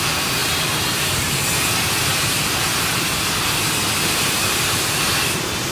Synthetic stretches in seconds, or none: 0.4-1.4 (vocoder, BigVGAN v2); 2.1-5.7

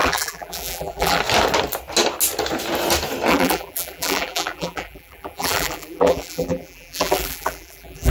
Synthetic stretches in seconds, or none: 0.0-1.2 (vocoder, BigVGAN v2); 3.3-8.1

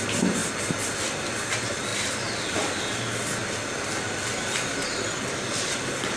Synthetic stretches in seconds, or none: 1.9-2.8 (vocoder, BigVGAN v2); 3.4-4.3

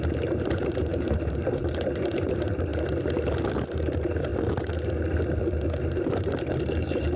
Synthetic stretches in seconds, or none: 0.0-2.7 (vocoder, BigVGAN v2); 3.5-4.3; 5.4-7.2

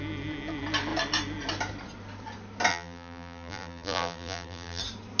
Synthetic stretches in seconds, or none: 2.7-4.8 (vocoder, BigVGAN v2)

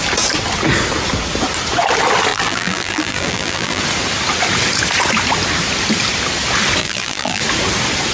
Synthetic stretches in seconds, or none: 2.3-3.8 (vocoder, BigVGAN v2); 6.8-7.4

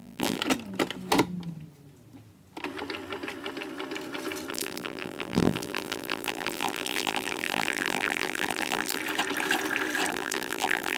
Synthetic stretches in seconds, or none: 0.0-0.4 (vocoder, BigVGAN v2); 4.5-9.0; 10.1-11.0

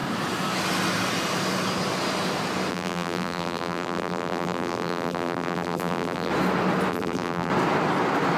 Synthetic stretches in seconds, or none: 2.7-6.3 (vocoder, BigVGAN v2); 6.9-7.5